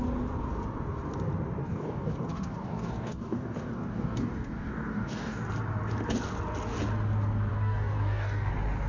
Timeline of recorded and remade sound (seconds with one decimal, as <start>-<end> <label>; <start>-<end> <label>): 0.0-1.6 recorded; 1.6-5.5 remade; 5.5-7.5 recorded; 7.5-8.5 remade; 8.5-8.9 recorded